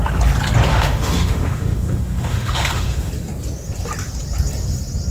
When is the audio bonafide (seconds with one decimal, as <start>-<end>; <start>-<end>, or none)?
0.0-0.7; 3.1-5.1